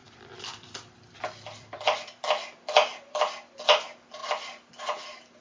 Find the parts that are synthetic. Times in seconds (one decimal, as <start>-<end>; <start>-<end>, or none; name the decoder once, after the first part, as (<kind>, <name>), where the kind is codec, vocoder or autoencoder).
0.0-3.2 (vocoder, BigVGAN v2)